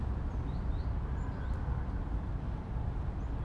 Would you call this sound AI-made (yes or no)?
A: yes